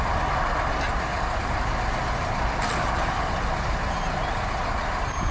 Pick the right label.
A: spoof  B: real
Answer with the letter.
B